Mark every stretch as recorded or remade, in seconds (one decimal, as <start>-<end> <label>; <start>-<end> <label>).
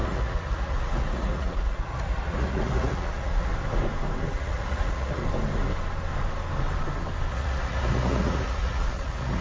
0.0-3.5 remade; 3.5-4.3 recorded; 4.3-5.2 remade; 5.2-7.3 recorded; 7.3-9.4 remade